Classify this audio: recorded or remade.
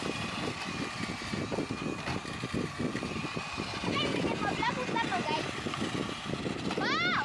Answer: recorded